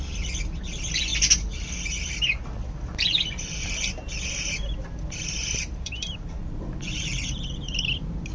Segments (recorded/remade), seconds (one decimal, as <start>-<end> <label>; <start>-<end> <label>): 0.0-1.1 remade; 1.1-2.4 recorded; 2.4-8.3 remade